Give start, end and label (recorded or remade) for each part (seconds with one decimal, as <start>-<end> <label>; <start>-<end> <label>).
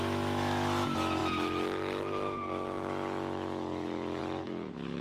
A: 0.0-5.0 remade